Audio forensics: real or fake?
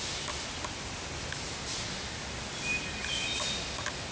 real